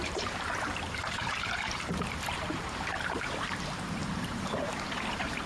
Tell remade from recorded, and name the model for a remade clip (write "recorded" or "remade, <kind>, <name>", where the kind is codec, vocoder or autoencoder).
remade, vocoder, BigVGAN v2